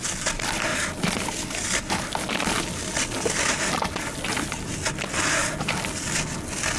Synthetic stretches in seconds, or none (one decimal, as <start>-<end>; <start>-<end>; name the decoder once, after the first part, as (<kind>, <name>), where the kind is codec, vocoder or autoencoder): none